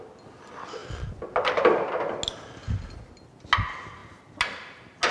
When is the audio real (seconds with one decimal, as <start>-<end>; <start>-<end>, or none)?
0.0-5.1